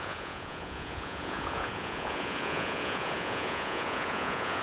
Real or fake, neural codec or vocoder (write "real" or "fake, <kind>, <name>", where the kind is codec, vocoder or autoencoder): fake, vocoder, Vocos